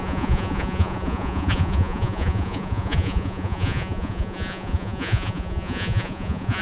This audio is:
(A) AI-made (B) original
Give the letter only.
A